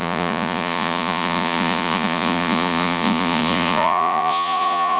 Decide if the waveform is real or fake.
fake